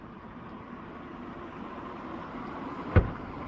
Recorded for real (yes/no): no